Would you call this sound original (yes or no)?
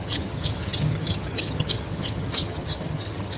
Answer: no